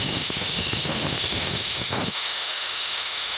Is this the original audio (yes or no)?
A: no